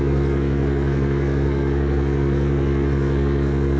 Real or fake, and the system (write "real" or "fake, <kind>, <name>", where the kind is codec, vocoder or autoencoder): fake, codec, SNAC